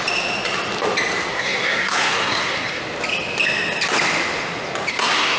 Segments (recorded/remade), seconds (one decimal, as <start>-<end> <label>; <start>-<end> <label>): 0.0-1.3 recorded; 1.3-2.8 remade; 2.8-4.9 recorded; 4.9-5.4 remade